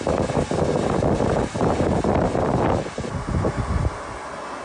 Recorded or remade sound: recorded